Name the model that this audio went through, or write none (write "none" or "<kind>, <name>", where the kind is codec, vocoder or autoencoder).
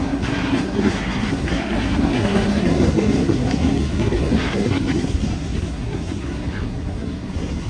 codec, SNAC